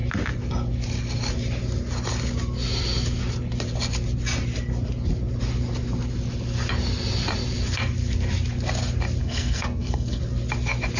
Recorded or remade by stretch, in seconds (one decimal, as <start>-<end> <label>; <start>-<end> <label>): 0.0-9.2 recorded; 9.2-10.2 remade; 10.2-11.0 recorded